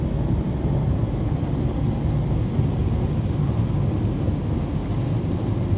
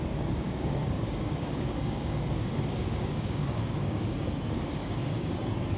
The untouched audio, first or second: first